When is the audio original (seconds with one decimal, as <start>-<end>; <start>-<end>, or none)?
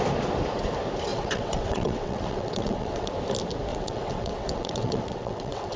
0.0-1.1; 3.1-3.7